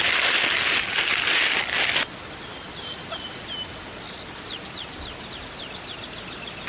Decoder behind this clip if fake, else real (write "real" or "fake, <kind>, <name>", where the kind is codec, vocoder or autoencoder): real